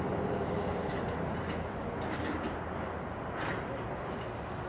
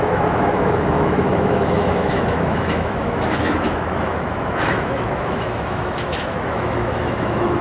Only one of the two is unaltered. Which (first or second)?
first